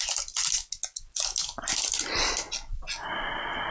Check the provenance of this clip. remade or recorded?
recorded